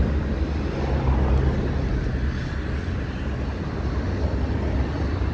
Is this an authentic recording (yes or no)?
yes